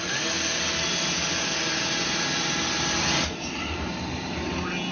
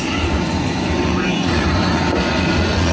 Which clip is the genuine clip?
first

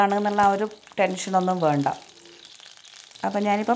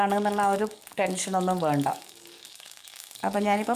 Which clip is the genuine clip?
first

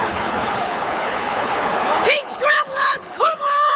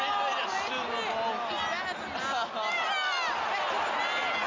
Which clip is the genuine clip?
second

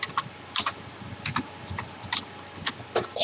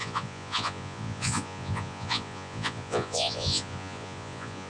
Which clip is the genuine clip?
first